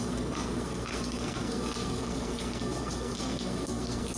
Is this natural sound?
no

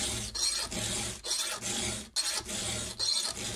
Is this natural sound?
yes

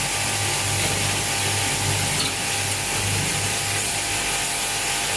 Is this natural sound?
yes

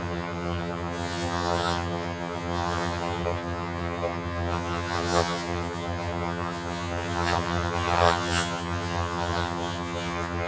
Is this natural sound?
no